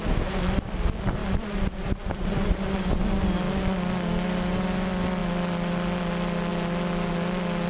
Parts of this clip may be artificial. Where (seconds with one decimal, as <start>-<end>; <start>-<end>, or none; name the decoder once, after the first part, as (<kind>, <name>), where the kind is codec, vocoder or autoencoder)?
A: none